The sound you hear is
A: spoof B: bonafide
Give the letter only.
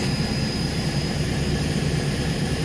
A